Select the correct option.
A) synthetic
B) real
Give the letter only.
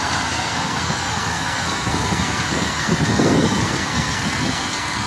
A